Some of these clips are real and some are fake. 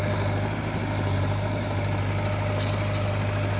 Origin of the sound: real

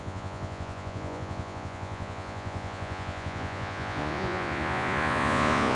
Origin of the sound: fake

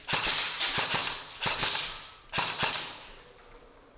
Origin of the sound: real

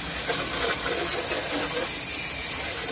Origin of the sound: real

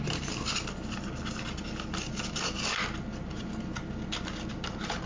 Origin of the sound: real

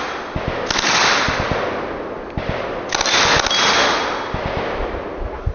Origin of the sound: real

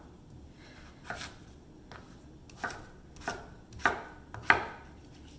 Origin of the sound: real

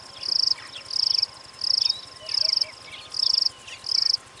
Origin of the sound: real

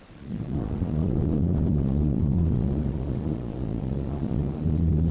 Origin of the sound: fake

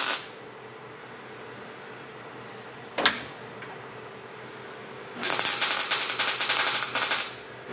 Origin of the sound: real